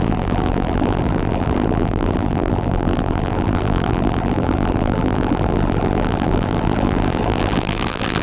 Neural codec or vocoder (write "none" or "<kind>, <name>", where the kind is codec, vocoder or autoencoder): vocoder, BigVGAN v2